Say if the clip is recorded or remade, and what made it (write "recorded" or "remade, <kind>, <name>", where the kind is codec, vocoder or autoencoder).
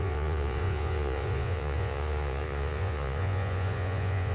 remade, vocoder, Vocos